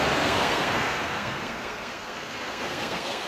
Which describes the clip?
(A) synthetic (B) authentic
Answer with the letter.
A